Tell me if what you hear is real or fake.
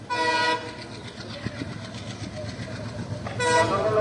real